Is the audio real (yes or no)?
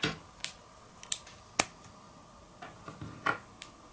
yes